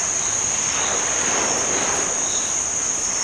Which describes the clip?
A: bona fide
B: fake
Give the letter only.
A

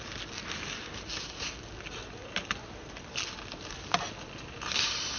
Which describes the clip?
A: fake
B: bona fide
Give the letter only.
B